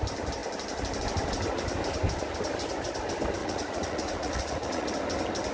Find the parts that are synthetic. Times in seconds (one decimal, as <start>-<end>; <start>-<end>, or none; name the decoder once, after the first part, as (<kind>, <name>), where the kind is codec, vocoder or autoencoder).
3.4-4.9 (vocoder, Vocos)